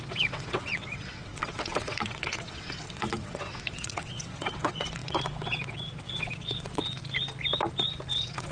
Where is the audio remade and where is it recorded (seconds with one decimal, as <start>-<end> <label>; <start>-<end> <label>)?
0.0-7.0 remade; 7.0-8.1 recorded; 8.1-8.5 remade